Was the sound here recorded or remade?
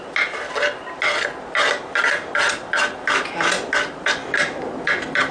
recorded